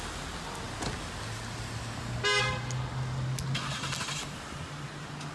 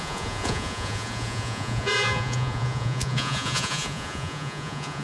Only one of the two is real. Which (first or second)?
first